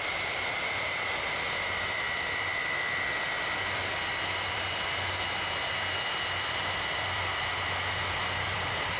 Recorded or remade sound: remade